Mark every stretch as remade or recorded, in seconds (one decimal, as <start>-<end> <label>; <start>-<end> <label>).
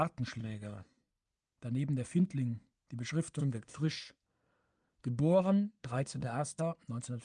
0.0-0.4 recorded; 0.4-1.1 remade; 1.1-3.4 recorded; 3.4-6.6 remade; 6.6-7.2 recorded